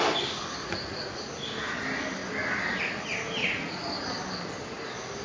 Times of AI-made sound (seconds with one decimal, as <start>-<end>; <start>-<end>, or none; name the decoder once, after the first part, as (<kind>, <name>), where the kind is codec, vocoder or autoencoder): 0.6-1.2 (vocoder, Vocos); 3.4-4.0